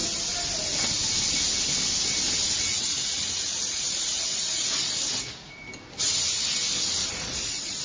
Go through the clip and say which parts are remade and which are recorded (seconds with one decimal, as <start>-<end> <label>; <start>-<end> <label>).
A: 0.0-2.7 recorded; 2.7-5.7 remade; 5.7-7.0 recorded; 7.0-7.8 remade